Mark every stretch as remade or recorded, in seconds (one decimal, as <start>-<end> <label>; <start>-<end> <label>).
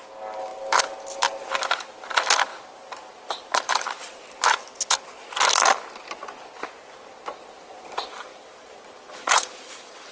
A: 0.0-2.5 recorded; 2.5-4.1 remade; 4.1-8.3 recorded; 8.3-10.1 remade